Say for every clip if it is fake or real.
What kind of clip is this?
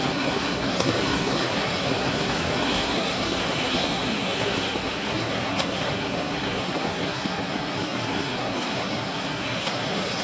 fake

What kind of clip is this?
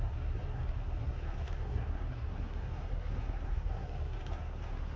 fake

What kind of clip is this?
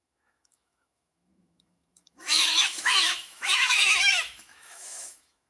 fake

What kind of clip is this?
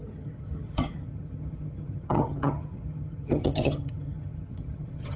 fake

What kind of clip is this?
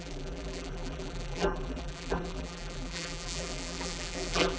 fake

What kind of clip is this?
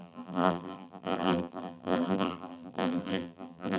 fake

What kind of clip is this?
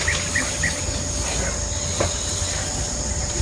real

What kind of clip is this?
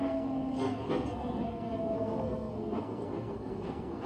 fake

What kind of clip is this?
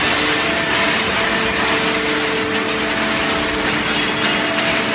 real